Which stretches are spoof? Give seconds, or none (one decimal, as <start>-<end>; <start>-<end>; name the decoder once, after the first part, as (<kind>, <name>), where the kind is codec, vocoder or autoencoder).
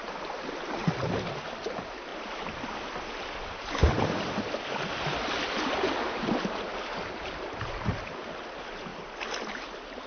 0.0-8.9 (vocoder, BigVGAN v2); 9.7-10.1